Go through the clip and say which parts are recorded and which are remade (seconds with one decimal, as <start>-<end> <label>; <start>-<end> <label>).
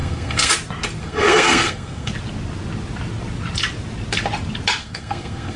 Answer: 0.0-0.5 remade; 0.5-1.0 recorded; 1.0-2.1 remade; 2.1-4.8 recorded; 4.8-5.6 remade